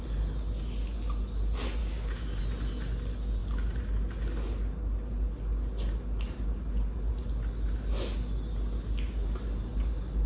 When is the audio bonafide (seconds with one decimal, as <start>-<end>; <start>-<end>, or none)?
0.0-1.8; 2.4-10.3